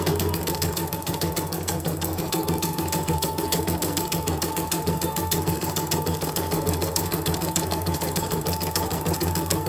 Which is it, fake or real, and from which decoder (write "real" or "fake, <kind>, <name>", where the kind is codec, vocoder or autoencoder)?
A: fake, codec, SNAC